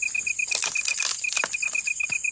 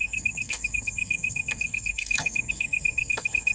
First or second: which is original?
first